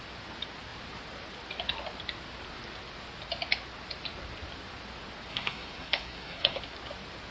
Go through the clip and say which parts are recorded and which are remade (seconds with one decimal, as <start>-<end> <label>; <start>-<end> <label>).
0.0-5.3 recorded; 5.3-6.6 remade; 6.6-7.3 recorded